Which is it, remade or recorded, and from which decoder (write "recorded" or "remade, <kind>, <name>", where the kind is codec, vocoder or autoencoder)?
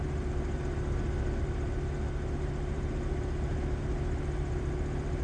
recorded